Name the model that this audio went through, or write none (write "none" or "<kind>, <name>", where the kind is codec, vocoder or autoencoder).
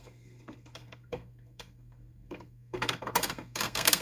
codec, SNAC